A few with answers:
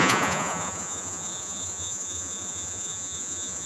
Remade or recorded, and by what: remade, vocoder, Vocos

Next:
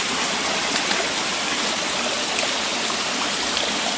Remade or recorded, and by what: remade, vocoder, BigVGAN v2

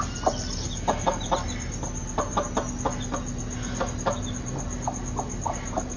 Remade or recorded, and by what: recorded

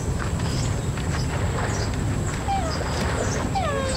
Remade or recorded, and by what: recorded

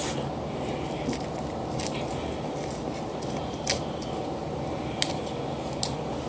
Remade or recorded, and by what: recorded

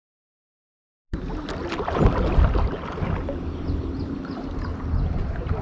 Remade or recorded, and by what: recorded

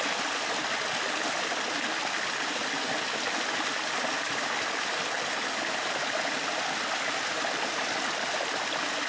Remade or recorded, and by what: recorded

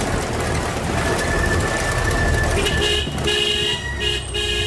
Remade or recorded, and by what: recorded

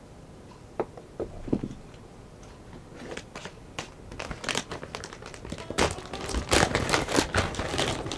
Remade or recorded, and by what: recorded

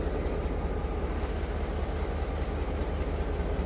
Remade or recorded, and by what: recorded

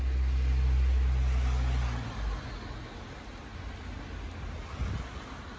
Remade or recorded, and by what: recorded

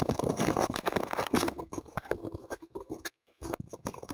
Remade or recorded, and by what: remade, codec, SNAC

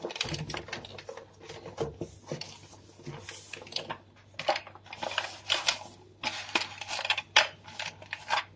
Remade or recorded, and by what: recorded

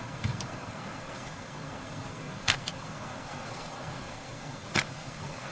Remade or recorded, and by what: remade, codec, SNAC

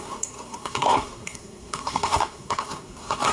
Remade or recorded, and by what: remade, codec, SNAC